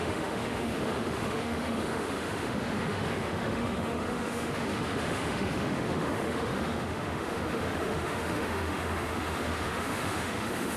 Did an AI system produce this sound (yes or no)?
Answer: yes